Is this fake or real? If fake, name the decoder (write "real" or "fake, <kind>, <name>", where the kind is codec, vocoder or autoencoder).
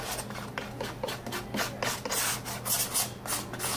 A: real